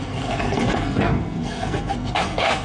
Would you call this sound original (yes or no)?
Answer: no